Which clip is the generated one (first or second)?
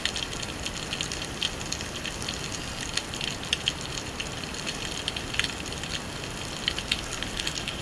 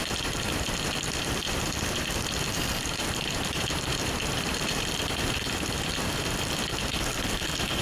second